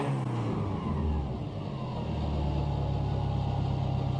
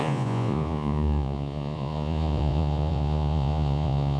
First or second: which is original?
first